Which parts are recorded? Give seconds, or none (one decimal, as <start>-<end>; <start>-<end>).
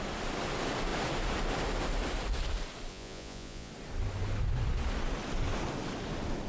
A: 0.0-2.9; 3.7-6.5